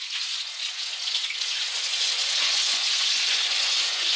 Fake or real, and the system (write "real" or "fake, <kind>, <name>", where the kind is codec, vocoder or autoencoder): fake, vocoder, Vocos